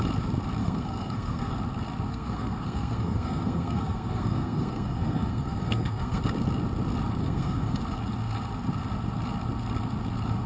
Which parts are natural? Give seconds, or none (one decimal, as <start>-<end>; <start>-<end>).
0.0-0.6; 1.5-2.1; 6.2-7.2; 7.8-10.5